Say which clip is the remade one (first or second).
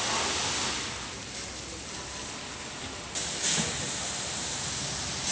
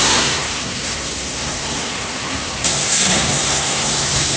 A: second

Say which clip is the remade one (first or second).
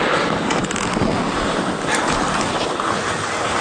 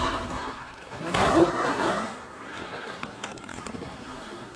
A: second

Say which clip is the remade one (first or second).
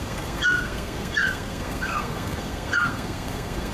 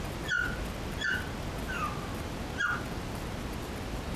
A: first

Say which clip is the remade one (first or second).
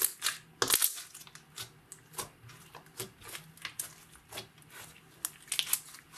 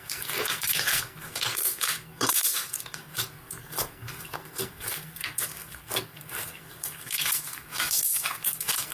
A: second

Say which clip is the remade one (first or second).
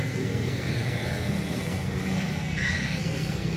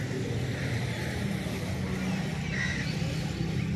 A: first